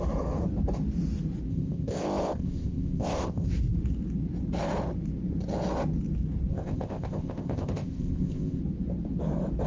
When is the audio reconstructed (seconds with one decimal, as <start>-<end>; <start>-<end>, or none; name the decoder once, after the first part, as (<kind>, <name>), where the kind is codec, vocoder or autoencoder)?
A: 1.5-3.5 (codec, ZipCodec); 6.5-8.6